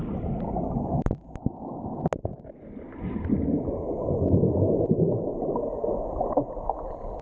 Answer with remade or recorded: recorded